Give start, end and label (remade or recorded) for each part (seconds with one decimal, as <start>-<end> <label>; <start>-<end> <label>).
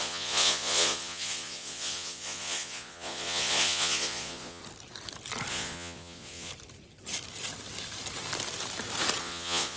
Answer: 0.0-4.6 remade; 4.6-5.5 recorded; 5.5-6.5 remade; 6.5-9.2 recorded; 9.2-9.8 remade